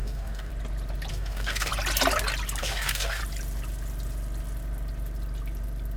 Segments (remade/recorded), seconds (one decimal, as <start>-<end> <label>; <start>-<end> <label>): 0.0-0.5 remade; 0.5-1.1 recorded; 1.1-1.7 remade; 1.7-2.6 recorded; 2.6-3.2 remade; 3.2-6.0 recorded

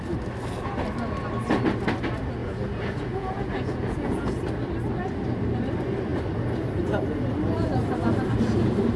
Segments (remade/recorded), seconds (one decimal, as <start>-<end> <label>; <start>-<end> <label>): 0.0-2.4 recorded; 2.4-4.4 remade; 4.4-9.0 recorded

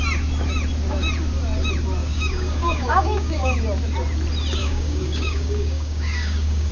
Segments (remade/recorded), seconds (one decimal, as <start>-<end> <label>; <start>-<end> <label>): 0.0-2.0 recorded; 2.0-3.6 remade; 3.6-4.6 recorded; 4.6-6.7 remade

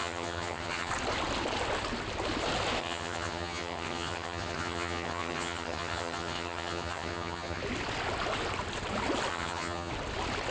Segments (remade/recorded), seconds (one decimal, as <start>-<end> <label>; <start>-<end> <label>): 0.0-0.9 remade; 0.9-2.8 recorded; 2.8-7.6 remade; 7.6-9.3 recorded; 9.3-9.9 remade; 9.9-10.5 recorded

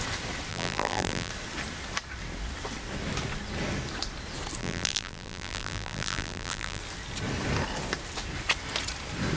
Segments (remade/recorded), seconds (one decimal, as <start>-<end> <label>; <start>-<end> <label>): 0.0-0.5 recorded; 0.5-1.3 remade; 1.3-4.6 recorded; 4.6-6.8 remade; 6.8-9.4 recorded